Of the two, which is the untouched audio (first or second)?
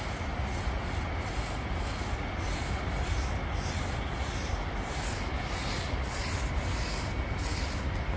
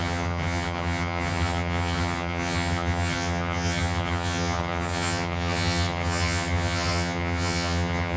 first